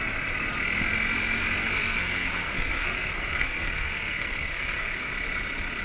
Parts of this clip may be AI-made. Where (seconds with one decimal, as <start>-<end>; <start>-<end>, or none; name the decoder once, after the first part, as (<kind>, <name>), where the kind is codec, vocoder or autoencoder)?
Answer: 1.6-5.1 (codec, SNAC)